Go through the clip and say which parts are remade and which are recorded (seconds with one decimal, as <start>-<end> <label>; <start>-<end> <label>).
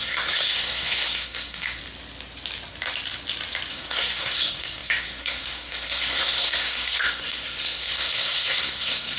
0.0-1.8 remade; 1.8-3.7 recorded; 3.7-9.2 remade